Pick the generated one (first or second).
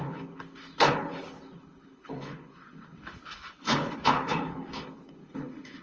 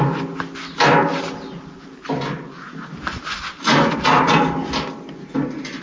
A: first